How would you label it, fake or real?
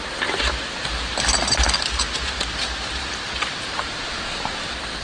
real